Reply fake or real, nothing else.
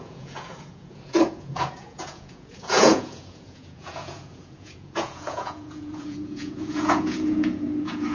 fake